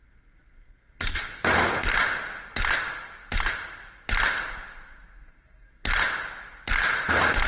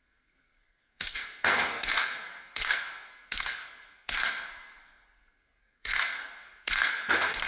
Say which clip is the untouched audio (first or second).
first